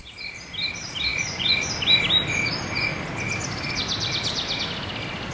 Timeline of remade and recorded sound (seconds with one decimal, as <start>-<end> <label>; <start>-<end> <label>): 0.0-1.1 recorded; 1.1-1.7 remade; 1.7-5.3 recorded